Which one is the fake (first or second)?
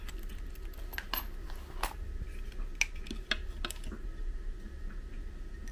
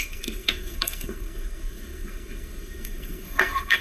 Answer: second